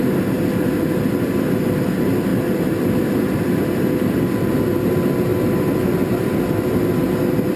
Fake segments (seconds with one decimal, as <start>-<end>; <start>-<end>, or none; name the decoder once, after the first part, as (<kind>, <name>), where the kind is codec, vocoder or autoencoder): none